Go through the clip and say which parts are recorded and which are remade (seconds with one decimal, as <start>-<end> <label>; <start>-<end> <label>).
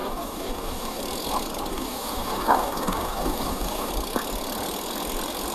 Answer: 0.0-1.0 remade; 1.0-1.7 recorded; 1.7-3.9 remade; 3.9-5.5 recorded